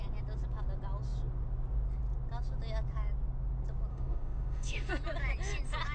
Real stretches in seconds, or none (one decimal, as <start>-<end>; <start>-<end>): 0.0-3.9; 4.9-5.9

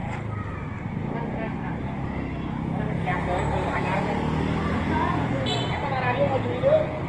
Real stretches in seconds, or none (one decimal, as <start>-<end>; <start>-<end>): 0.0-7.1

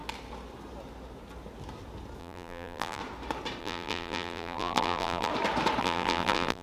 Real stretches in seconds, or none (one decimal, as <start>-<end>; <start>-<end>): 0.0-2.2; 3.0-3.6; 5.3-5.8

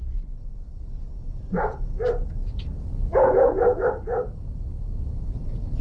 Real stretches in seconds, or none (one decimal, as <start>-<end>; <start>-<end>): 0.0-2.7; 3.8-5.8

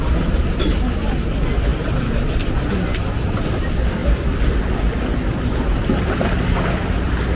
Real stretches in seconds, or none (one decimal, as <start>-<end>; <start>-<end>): 0.0-1.7; 2.5-4.0; 4.6-7.4

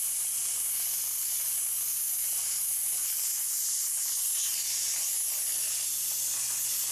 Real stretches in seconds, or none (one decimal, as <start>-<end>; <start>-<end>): 0.0-6.9

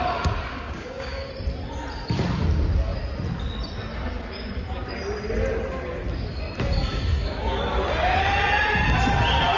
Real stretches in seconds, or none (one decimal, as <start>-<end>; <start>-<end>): 0.0-0.5; 1.3-7.1; 7.6-9.6

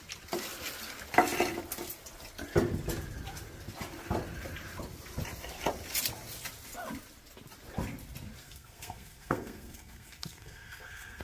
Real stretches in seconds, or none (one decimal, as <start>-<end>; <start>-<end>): 0.0-8.4